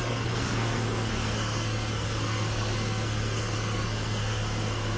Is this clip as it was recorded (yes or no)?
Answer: no